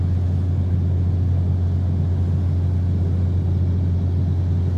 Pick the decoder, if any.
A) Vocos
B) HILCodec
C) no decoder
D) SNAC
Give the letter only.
C